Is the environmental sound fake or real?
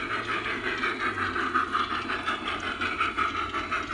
real